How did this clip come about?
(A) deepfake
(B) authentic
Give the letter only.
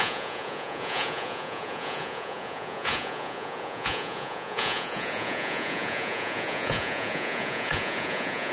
A